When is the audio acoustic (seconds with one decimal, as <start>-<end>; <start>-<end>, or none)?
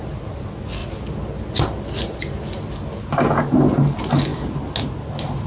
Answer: 0.0-5.5